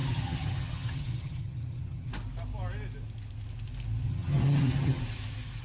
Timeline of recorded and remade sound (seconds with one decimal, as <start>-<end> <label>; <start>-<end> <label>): 0.0-2.1 remade; 2.1-4.1 recorded; 4.1-5.0 remade; 5.0-5.6 recorded